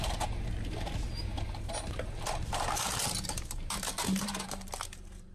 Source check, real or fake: fake